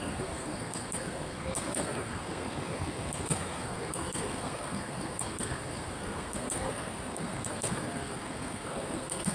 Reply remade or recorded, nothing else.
remade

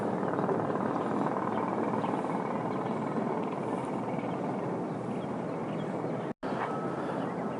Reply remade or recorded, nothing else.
recorded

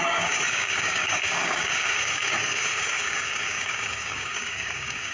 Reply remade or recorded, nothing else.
remade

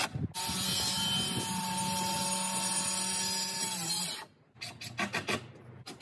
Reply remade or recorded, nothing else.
recorded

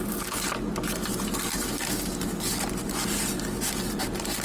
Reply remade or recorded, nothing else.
recorded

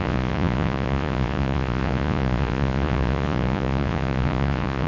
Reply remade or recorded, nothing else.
remade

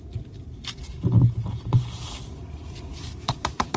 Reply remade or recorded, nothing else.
remade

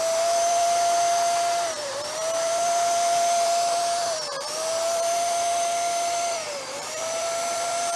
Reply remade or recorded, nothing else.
remade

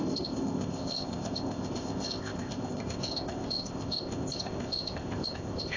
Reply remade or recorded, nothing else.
remade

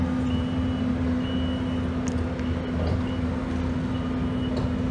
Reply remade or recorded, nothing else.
recorded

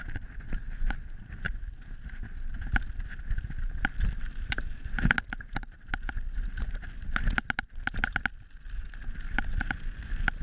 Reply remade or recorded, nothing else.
recorded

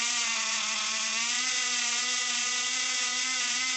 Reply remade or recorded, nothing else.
remade